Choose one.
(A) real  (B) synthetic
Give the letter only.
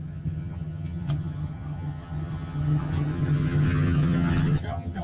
B